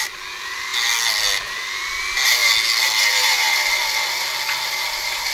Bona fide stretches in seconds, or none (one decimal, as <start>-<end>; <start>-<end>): 0.0-5.3